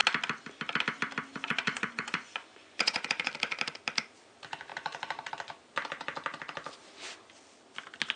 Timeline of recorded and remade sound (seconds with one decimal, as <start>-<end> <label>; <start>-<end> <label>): 0.0-1.3 recorded; 1.3-3.3 remade; 3.3-4.7 recorded; 4.7-5.3 remade; 5.3-8.2 recorded